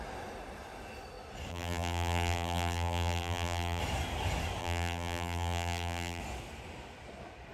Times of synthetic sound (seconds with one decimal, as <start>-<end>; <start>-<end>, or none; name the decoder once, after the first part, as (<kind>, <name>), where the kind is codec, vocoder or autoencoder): 1.5-3.8 (vocoder, BigVGAN v2); 4.6-6.2